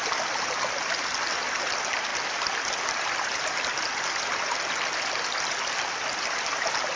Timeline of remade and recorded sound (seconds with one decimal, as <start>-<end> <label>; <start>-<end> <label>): 0.0-7.0 recorded